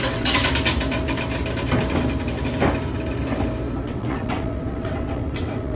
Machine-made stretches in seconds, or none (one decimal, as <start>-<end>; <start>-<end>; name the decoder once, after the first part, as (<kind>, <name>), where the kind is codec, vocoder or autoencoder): 0.0-0.4 (vocoder, WaveNeXt); 3.8-5.7

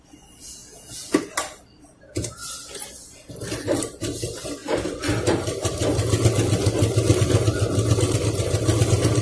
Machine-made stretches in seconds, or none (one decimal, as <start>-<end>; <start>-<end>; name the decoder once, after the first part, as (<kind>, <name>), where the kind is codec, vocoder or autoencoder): 0.6-1.2 (vocoder, Vocos)